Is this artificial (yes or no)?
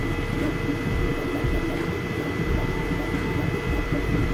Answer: no